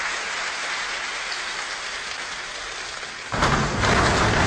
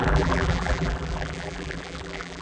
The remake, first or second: second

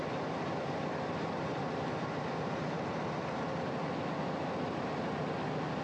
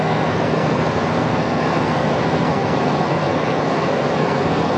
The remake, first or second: second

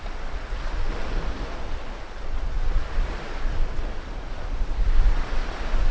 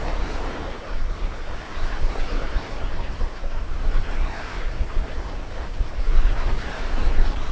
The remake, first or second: second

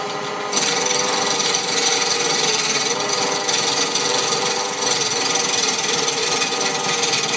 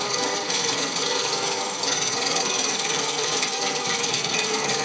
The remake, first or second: second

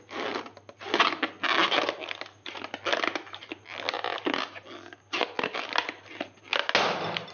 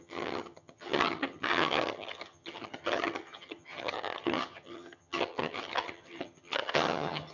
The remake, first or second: second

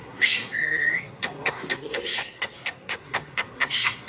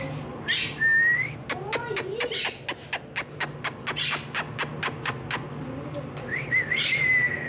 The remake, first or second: first